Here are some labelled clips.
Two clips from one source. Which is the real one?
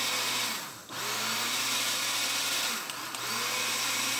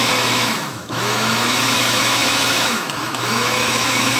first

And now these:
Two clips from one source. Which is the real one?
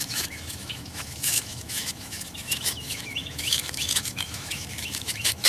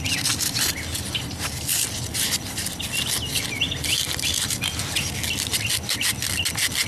second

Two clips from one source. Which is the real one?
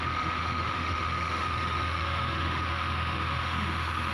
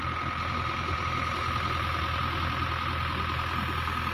second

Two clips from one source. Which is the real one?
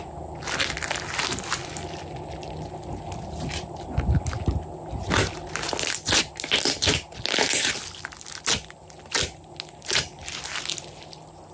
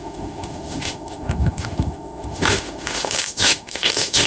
first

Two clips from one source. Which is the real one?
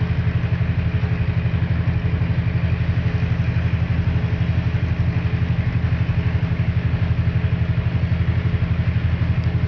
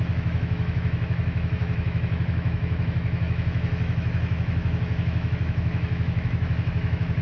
first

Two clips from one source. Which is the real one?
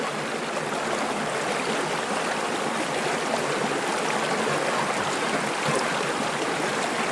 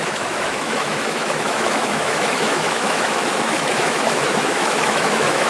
first